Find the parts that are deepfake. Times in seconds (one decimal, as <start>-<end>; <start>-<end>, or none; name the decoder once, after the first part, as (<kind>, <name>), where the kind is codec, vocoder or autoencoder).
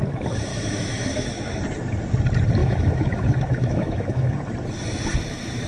0.5-1.6 (autoencoder, DAC-VAE); 2.6-4.3